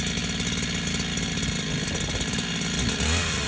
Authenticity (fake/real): real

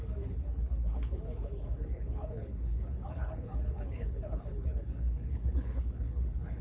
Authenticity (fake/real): fake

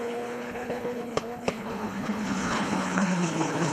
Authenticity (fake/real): fake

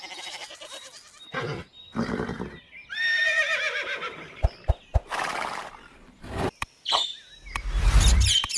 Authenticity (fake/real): fake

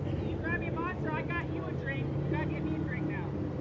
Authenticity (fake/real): real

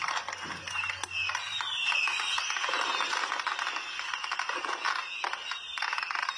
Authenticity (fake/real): real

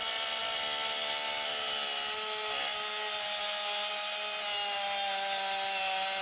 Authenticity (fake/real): real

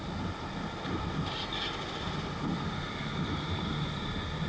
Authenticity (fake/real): real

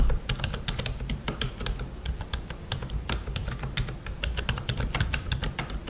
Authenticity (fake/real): real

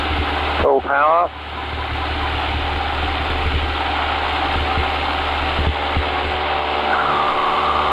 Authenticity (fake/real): real